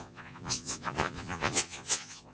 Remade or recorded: remade